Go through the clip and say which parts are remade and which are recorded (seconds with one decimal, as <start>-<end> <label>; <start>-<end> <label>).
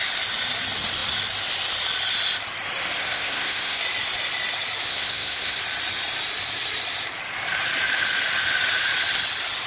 0.0-3.0 recorded; 3.0-3.8 remade; 3.8-4.9 recorded; 4.9-5.6 remade; 5.6-9.7 recorded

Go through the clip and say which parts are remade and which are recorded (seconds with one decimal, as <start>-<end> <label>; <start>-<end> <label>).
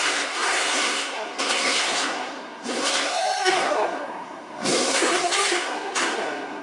0.0-6.6 remade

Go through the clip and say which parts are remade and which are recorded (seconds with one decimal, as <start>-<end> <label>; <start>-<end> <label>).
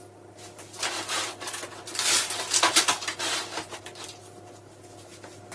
0.0-5.5 recorded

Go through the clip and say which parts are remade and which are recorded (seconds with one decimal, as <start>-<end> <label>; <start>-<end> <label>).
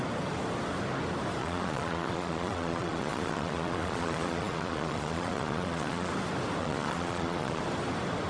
0.0-1.4 recorded; 1.4-6.1 remade; 6.1-6.6 recorded; 6.6-7.6 remade; 7.6-8.3 recorded